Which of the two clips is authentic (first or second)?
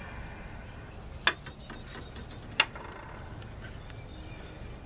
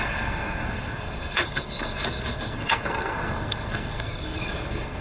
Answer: first